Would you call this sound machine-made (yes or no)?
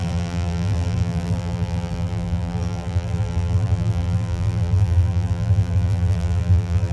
yes